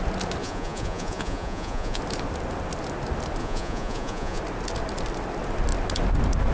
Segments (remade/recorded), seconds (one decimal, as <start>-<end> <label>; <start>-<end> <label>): 0.0-0.4 recorded; 0.4-2.0 remade; 2.0-3.4 recorded; 3.4-4.4 remade; 4.4-6.5 recorded